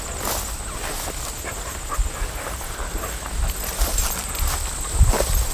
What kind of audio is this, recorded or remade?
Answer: recorded